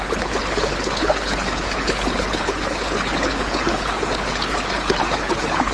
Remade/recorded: remade